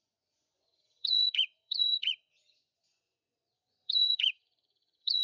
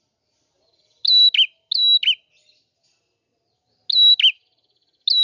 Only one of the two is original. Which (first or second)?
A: second